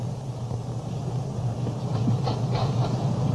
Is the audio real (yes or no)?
yes